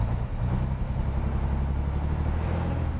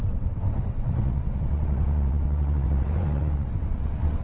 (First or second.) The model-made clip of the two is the second